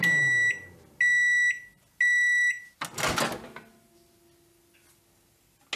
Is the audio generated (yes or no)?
no